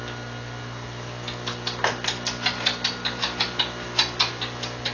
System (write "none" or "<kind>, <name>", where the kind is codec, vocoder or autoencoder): none